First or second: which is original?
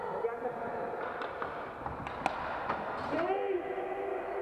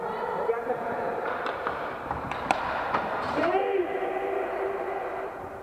first